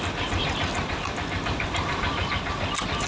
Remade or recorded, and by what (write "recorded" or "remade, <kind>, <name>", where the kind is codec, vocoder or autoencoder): recorded